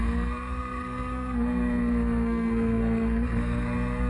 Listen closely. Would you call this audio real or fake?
fake